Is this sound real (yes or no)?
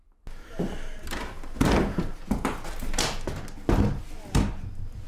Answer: yes